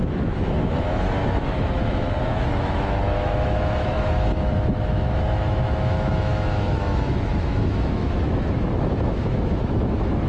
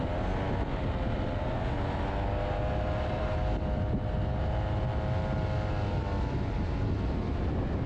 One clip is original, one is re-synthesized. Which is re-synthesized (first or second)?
first